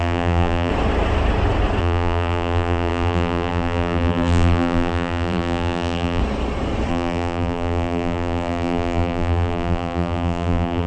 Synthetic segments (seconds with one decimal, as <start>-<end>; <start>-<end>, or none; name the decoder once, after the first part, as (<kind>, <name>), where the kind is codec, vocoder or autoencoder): 0.0-0.7 (vocoder, BigVGAN v2); 1.8-6.2; 6.9-10.9